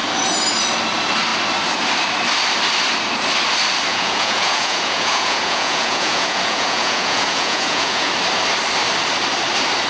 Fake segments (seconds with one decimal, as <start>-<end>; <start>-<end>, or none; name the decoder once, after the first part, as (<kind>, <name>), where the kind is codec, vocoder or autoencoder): 3.9-8.1 (vocoder, Vocos)